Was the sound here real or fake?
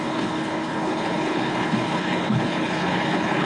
fake